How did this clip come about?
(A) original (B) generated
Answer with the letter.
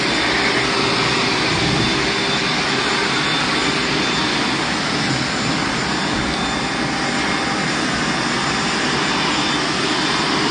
A